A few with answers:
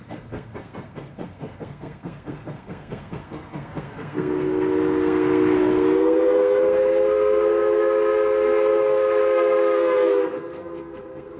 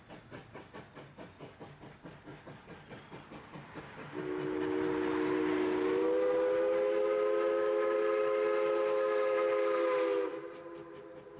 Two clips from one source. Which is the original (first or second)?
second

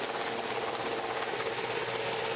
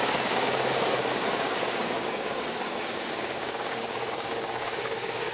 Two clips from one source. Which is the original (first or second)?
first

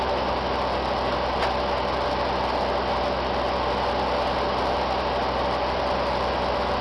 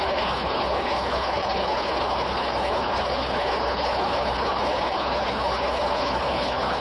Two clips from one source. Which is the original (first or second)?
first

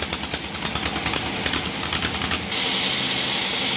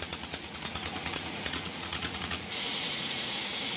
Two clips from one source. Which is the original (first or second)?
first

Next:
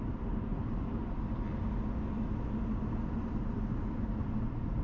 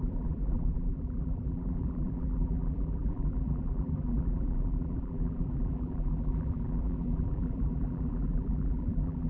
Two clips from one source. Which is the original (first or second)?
first